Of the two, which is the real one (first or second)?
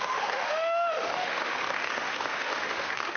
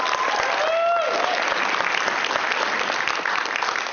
second